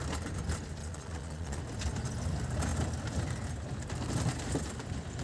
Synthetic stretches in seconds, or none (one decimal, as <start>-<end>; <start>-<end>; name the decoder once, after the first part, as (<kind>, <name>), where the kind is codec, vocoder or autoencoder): 0.8-1.6 (vocoder, Vocos)